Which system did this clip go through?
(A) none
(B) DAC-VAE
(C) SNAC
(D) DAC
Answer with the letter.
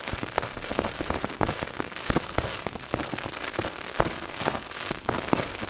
C